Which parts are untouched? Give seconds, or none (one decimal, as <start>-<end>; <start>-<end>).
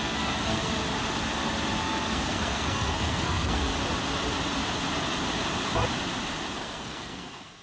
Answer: 0.8-1.8; 3.7-6.5